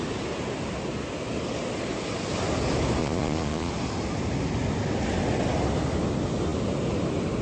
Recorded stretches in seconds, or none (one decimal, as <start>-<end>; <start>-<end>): 0.0-3.0; 3.7-7.4